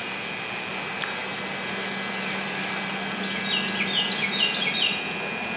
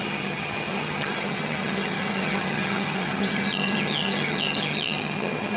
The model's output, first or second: second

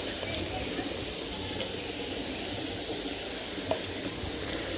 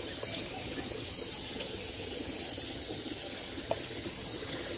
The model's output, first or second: second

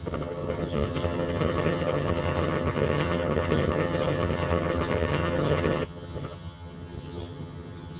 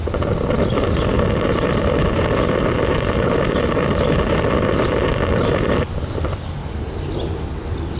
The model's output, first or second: first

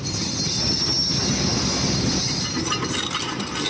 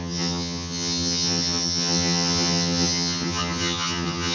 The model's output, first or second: second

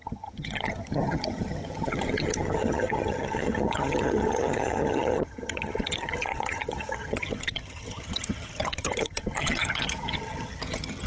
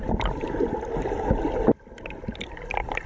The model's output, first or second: first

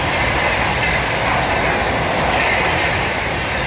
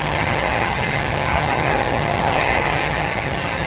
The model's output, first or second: second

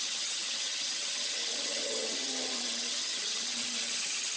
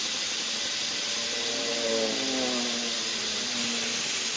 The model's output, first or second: first